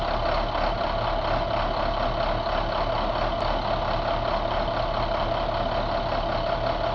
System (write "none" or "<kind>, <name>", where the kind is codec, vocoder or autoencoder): none